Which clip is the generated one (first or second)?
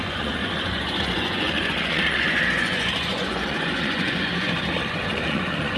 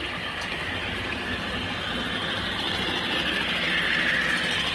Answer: first